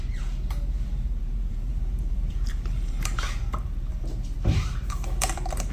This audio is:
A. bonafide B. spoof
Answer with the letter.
B